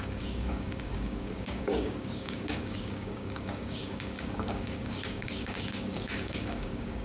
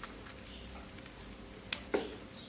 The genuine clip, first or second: second